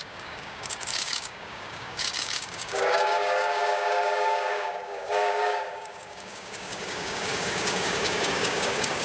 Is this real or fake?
fake